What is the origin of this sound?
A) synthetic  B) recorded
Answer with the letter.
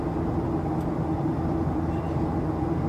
B